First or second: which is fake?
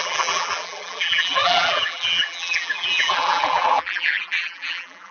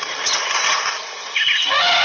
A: first